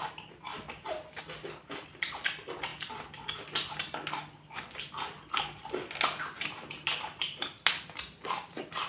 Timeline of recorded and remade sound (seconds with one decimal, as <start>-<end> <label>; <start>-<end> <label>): 0.0-8.9 recorded